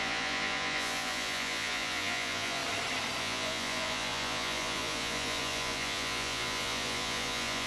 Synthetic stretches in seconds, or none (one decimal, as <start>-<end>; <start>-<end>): 0.0-2.6; 3.2-7.7